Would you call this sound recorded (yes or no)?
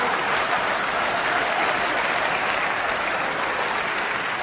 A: yes